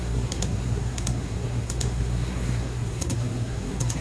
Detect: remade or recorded remade